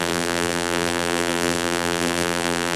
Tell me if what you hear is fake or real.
fake